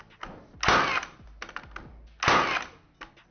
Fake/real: real